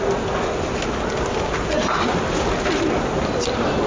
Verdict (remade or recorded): recorded